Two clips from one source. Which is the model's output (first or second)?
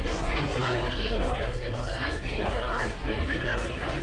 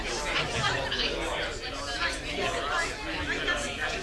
first